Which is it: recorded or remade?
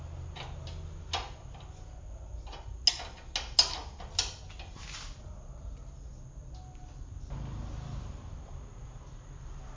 recorded